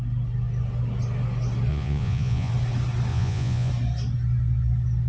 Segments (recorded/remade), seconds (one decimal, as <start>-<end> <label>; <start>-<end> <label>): 0.0-1.7 recorded; 1.7-2.5 remade; 2.5-3.1 recorded; 3.1-3.7 remade; 3.7-5.1 recorded